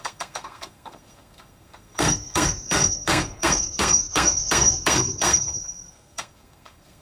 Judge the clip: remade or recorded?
remade